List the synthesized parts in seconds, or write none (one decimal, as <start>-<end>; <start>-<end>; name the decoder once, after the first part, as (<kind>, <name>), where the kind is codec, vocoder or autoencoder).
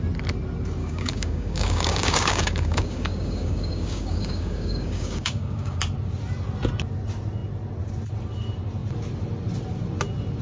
0.8-5.8 (codec, DAC)